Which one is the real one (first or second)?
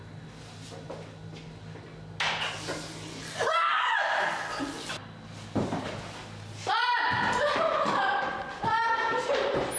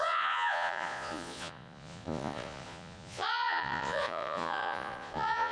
first